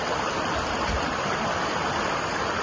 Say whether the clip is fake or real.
real